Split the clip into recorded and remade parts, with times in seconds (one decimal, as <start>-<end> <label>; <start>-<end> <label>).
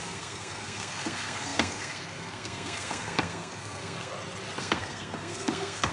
0.0-4.1 remade; 4.1-4.6 recorded; 4.6-5.9 remade